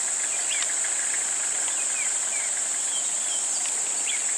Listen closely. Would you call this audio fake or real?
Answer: real